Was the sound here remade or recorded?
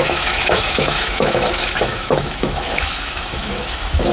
remade